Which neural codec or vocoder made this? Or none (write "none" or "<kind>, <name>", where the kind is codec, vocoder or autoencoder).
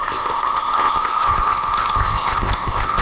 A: codec, ZipCodec